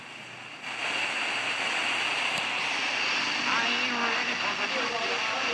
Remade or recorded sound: recorded